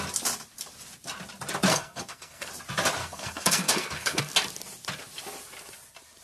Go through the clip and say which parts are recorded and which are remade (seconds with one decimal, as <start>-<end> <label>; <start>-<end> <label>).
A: 0.0-1.7 recorded; 1.7-2.5 remade; 2.5-3.0 recorded; 3.0-4.2 remade; 4.2-6.2 recorded